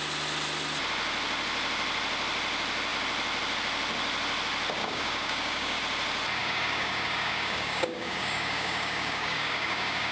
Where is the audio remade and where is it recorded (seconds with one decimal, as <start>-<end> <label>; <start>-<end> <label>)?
0.0-4.8 recorded; 4.8-5.8 remade; 5.8-6.4 recorded; 6.4-10.1 remade